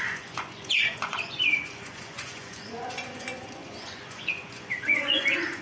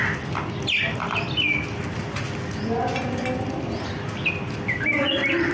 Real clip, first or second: second